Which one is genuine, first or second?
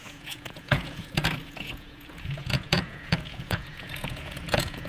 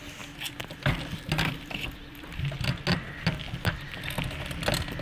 second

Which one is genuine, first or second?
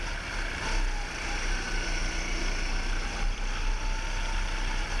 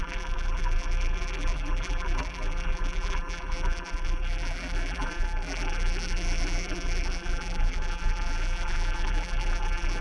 first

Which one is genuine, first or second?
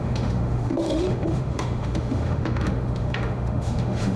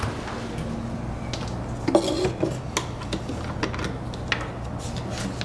second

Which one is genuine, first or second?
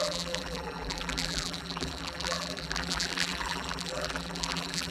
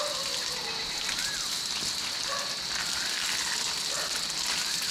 second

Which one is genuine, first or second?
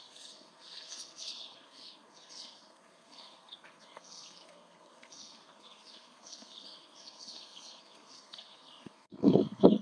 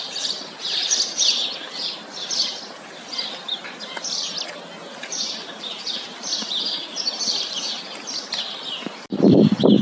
second